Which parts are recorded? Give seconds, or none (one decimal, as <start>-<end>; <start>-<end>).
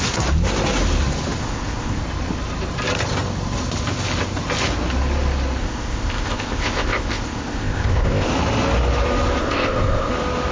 0.0-1.4; 2.0-5.6; 8.3-9.4; 10.1-10.5